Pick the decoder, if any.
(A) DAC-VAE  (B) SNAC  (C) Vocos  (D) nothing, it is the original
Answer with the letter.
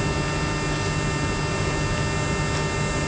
D